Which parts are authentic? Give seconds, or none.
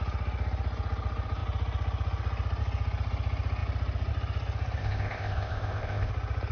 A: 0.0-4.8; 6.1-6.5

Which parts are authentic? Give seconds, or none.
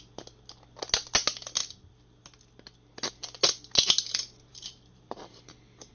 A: 0.0-4.5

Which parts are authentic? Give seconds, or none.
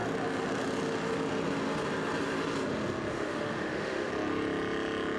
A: 0.0-3.1; 4.1-5.2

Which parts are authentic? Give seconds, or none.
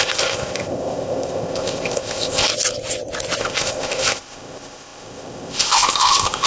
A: 2.5-3.4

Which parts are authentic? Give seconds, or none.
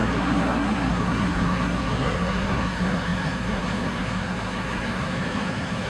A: none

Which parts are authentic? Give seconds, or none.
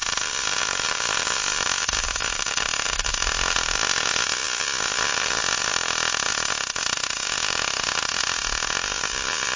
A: 0.0-9.6